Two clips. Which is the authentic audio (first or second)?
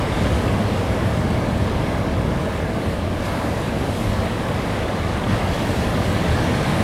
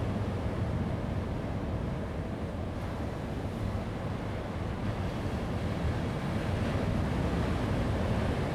second